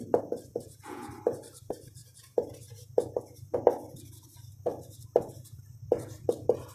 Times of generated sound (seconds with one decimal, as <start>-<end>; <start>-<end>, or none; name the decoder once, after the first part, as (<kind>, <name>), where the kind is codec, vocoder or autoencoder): 0.5-1.1 (vocoder, Vocos); 2.0-3.1